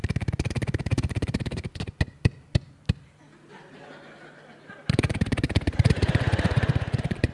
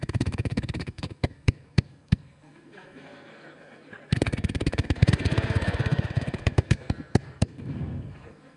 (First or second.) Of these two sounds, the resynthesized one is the second